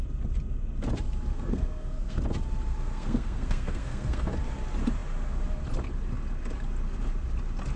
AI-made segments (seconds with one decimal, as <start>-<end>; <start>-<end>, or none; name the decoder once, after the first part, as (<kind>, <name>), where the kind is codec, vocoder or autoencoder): 1.3-2.2 (codec, SNAC); 2.7-4.3